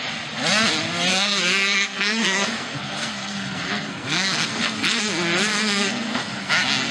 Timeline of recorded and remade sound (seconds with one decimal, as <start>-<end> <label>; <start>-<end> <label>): 0.0-1.1 recorded; 1.1-5.0 remade; 5.0-5.5 recorded; 5.5-6.5 remade; 6.5-6.9 recorded